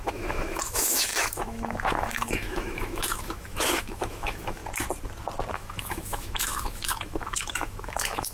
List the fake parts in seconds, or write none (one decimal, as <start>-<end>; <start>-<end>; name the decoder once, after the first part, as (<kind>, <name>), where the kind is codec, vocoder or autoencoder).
0.0-4.6 (autoencoder, DAC-VAE); 5.5-8.3